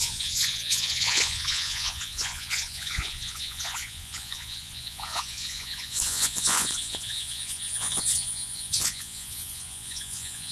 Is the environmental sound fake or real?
fake